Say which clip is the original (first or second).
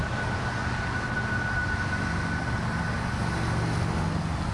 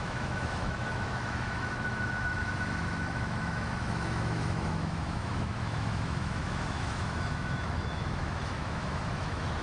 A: first